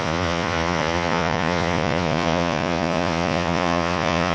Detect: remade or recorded remade